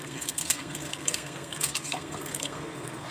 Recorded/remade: remade